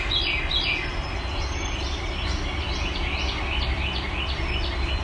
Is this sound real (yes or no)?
yes